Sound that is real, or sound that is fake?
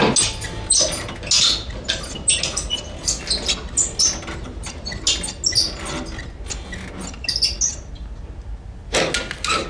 real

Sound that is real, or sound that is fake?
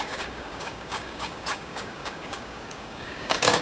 fake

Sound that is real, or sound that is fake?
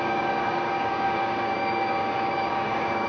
fake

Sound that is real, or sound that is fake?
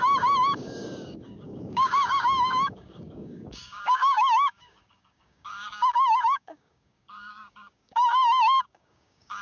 fake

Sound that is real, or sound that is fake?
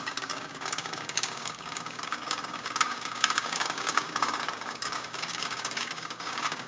fake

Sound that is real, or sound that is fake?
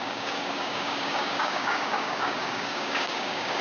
fake